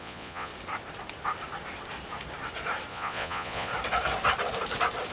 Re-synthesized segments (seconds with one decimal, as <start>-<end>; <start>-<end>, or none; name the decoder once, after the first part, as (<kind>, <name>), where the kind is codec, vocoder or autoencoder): 0.0-0.5 (vocoder, Vocos); 2.9-3.7